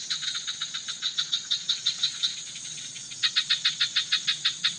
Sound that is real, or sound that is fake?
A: fake